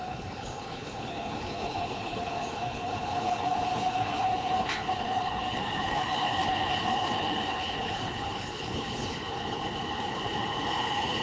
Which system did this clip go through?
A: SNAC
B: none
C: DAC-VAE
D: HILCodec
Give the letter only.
D